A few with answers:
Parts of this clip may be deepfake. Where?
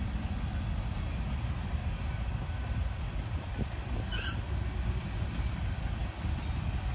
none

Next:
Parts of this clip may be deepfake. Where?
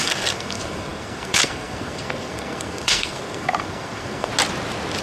0.0-4.3 (codec, SNAC)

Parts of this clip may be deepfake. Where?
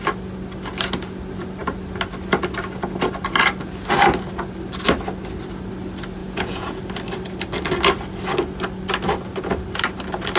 6.2-6.8 (vocoder, Vocos)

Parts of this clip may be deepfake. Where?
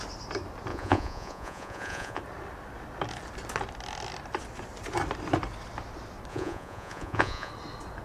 0.7-2.2 (vocoder, Vocos); 6.3-7.5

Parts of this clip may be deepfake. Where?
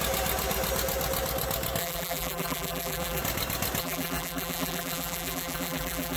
1.8-3.2 (vocoder, BigVGAN v2); 3.8-6.2